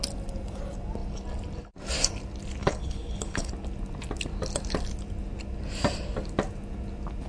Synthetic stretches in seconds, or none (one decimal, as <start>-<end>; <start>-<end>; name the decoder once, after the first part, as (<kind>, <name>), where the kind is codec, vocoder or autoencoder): 2.6-3.5 (codec, HILCodec)